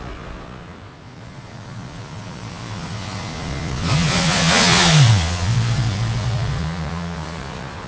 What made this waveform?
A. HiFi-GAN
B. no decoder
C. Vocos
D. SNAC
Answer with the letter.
C